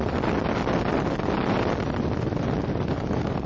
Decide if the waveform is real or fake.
real